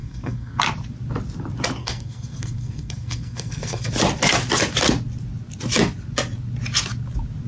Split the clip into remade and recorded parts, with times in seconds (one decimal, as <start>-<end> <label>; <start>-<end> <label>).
0.0-0.6 remade; 0.6-1.8 recorded; 1.8-3.9 remade; 3.9-7.5 recorded